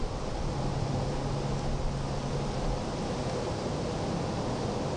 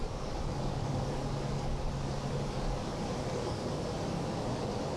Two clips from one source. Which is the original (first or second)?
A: first